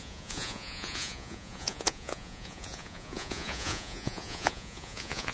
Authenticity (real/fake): fake